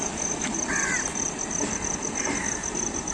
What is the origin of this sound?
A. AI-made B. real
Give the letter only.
A